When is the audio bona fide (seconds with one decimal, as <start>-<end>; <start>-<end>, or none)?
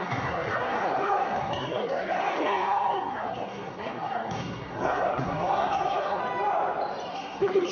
6.2-7.1